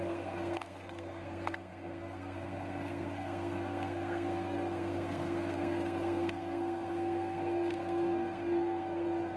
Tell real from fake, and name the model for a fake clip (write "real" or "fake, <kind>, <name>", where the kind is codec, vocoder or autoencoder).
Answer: fake, codec, SNAC